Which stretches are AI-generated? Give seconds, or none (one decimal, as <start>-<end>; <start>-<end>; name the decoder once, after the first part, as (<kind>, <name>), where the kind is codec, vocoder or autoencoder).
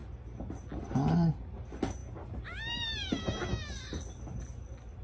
none